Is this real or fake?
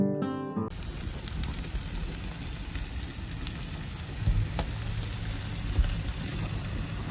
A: real